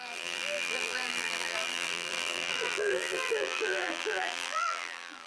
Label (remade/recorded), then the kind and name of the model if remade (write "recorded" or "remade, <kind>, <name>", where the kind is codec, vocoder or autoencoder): remade, vocoder, BigVGAN v2